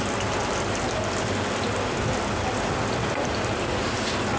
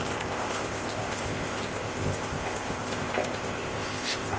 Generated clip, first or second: second